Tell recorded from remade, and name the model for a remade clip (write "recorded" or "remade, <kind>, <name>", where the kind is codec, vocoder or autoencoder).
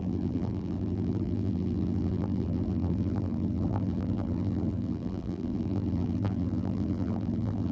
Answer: remade, vocoder, BigVGAN v2